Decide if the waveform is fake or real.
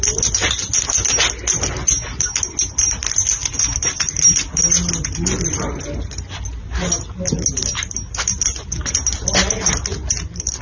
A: real